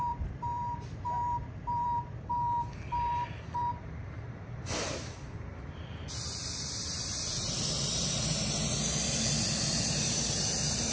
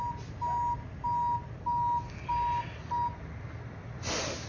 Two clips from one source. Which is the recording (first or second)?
second